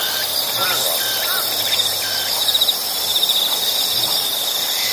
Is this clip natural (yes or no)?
no